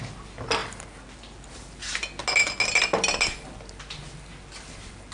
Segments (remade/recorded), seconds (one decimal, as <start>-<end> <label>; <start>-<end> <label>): 0.0-5.1 recorded